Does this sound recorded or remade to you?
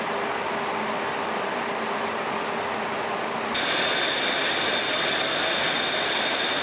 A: recorded